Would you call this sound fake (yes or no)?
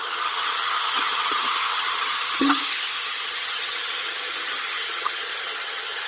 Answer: yes